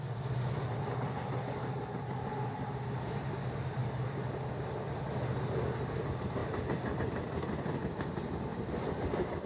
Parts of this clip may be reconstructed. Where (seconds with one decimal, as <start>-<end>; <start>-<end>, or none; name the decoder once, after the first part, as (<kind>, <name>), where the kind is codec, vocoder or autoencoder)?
0.0-3.8 (vocoder, BigVGAN v2); 5.0-8.5